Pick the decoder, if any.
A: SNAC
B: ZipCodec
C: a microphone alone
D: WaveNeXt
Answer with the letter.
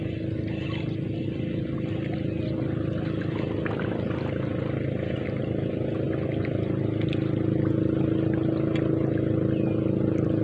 C